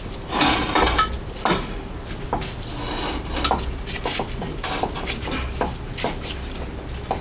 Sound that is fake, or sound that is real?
real